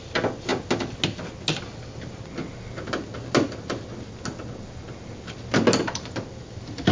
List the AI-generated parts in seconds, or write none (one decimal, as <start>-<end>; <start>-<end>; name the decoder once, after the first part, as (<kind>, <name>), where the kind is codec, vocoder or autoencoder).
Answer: 0.0-0.5 (vocoder, BigVGAN v2); 1.9-2.4; 5.8-6.9